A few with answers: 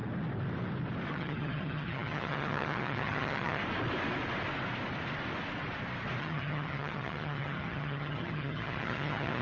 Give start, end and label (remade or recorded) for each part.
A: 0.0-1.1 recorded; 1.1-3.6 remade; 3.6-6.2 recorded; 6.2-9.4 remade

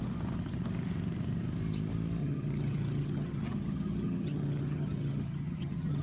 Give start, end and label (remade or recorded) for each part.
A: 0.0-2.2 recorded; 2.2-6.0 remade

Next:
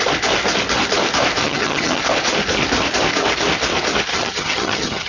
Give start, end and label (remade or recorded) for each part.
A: 0.0-1.4 recorded; 1.4-2.0 remade; 2.0-4.1 recorded; 4.1-5.1 remade

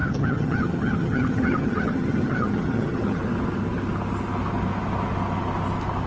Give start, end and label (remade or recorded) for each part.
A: 0.0-3.2 remade; 3.2-6.1 recorded

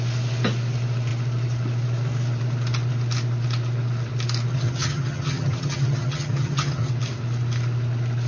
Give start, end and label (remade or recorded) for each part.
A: 0.0-4.5 recorded; 4.5-6.9 remade; 6.9-8.3 recorded

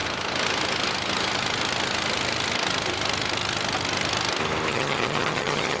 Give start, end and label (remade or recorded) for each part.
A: 0.0-4.7 recorded; 4.7-5.8 remade